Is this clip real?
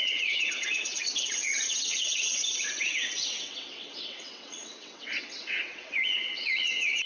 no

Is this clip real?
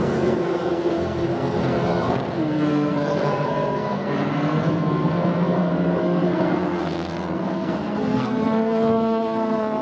no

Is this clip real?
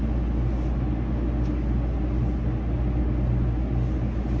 yes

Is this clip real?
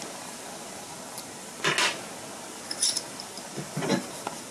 yes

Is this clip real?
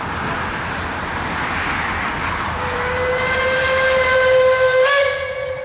yes